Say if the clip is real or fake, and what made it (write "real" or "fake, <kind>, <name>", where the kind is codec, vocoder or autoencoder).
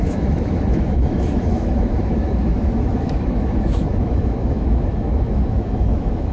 fake, autoencoder, DAC-VAE